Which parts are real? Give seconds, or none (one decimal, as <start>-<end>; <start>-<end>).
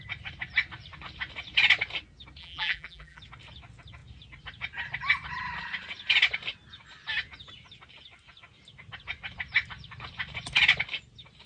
0.0-2.4; 3.2-11.5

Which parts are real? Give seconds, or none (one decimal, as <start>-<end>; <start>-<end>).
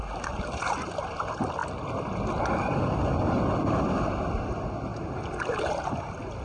0.0-6.4